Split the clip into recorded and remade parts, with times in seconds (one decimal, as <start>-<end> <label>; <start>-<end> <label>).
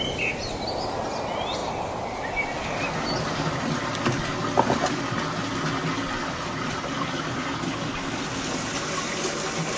0.0-9.8 recorded